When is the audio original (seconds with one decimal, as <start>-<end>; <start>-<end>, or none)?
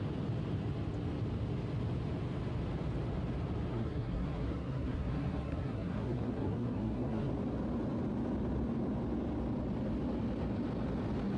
0.0-3.7; 7.3-11.4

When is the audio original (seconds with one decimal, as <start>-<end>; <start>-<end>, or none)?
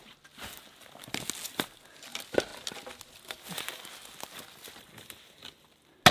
0.0-6.1